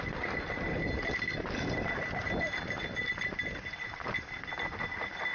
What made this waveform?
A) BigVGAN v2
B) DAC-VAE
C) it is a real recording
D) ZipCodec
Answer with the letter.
C